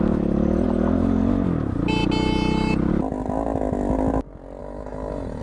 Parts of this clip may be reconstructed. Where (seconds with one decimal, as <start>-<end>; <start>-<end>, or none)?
4.6-5.4